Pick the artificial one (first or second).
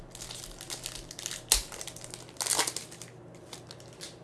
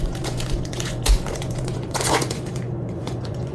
second